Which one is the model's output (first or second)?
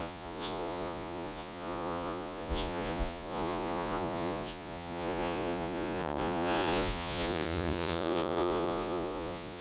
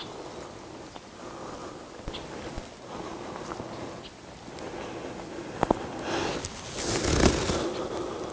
first